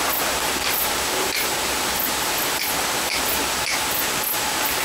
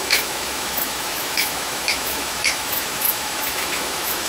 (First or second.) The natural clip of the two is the first